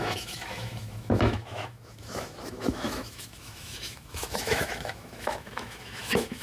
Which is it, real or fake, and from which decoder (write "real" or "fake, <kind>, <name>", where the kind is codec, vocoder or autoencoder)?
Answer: fake, autoencoder, DAC-VAE